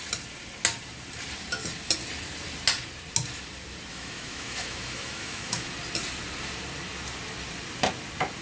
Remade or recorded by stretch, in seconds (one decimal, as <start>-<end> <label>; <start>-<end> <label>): 0.0-3.9 recorded; 3.9-5.7 remade; 5.7-8.4 recorded